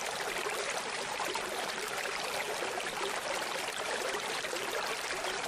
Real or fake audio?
fake